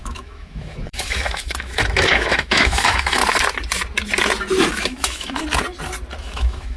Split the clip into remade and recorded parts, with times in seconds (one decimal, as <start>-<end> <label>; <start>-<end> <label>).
0.0-3.2 remade; 3.2-4.7 recorded; 4.7-5.4 remade; 5.4-6.2 recorded; 6.2-6.8 remade